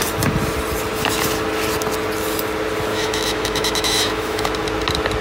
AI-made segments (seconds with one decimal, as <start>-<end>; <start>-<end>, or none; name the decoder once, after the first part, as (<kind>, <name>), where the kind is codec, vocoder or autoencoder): 2.9-4.5 (autoencoder, DAC-VAE)